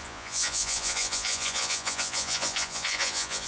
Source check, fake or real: fake